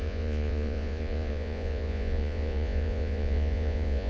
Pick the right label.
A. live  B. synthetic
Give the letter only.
B